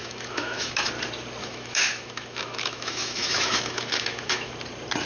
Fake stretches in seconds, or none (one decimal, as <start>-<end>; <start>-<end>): 0.0-0.9; 1.4-4.5